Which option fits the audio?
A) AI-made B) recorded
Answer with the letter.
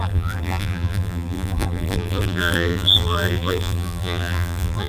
A